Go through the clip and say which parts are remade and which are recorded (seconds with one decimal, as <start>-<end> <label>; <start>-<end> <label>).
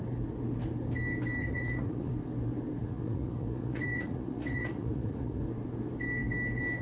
0.0-1.4 recorded; 1.4-2.1 remade; 2.1-2.8 recorded; 2.8-5.4 remade; 5.4-6.8 recorded